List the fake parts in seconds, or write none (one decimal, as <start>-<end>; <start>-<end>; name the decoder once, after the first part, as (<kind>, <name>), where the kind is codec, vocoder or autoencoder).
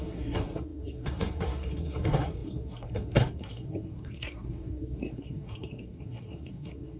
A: 0.0-7.0 (codec, SNAC)